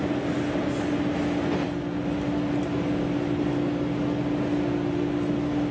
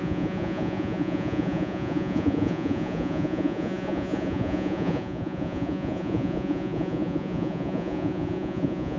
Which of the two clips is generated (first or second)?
second